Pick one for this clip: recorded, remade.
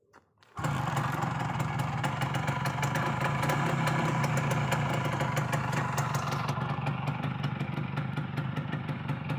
recorded